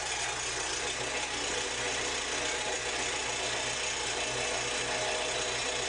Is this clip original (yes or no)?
yes